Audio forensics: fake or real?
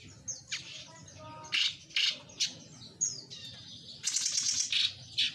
real